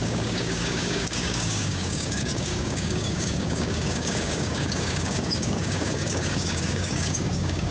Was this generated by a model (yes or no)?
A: yes